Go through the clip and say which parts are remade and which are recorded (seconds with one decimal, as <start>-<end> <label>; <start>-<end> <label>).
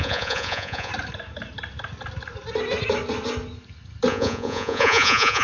0.0-0.9 remade; 0.9-4.1 recorded; 4.1-5.4 remade